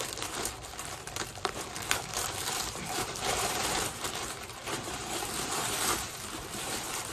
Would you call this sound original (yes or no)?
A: no